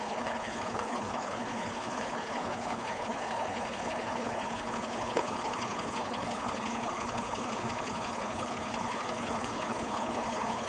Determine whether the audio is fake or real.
fake